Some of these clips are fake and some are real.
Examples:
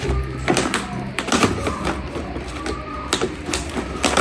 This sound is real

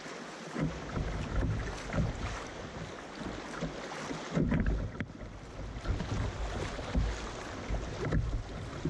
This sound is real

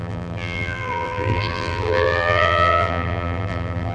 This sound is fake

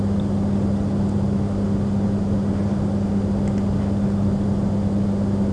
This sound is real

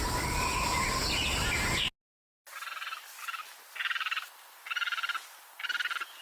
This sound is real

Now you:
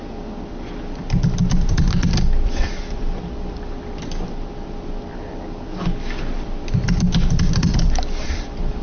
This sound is fake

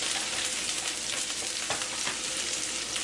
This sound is fake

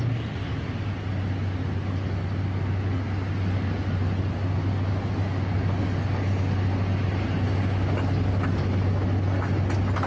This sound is real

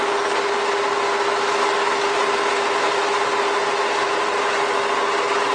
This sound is real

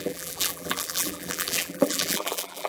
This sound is fake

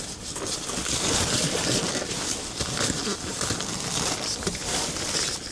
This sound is real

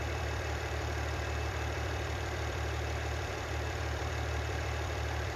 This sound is fake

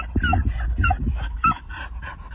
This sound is real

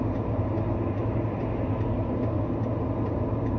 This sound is real